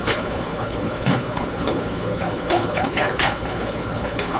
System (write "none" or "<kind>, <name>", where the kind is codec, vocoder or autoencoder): codec, HILCodec